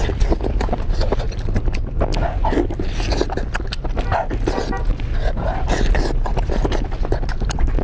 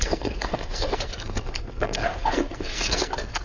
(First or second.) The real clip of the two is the first